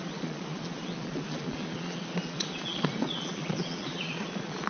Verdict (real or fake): fake